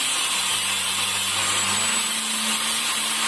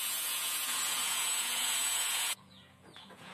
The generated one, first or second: second